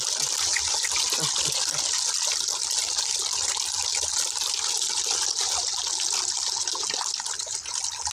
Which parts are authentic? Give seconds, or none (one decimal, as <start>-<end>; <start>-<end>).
0.0-8.1